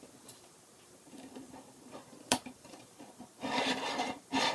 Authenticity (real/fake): fake